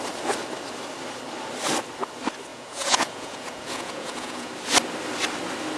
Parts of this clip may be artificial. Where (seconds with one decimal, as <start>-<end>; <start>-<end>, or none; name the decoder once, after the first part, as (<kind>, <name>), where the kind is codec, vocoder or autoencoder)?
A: 2.5-4.5 (vocoder, Vocos)